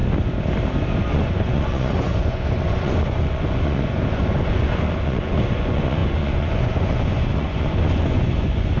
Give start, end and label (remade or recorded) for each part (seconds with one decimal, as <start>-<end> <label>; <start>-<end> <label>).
0.0-1.1 recorded; 1.1-8.8 remade